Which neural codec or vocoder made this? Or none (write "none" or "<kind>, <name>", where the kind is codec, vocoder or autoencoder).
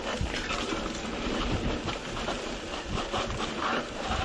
none